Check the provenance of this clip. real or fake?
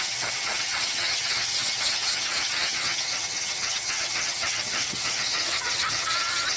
fake